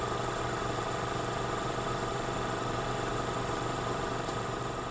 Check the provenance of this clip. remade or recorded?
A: remade